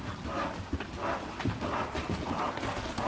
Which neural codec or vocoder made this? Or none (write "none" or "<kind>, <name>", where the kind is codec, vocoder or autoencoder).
none